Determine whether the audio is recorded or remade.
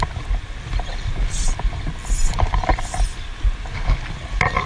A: recorded